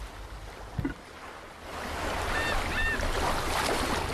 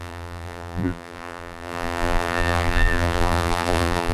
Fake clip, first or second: second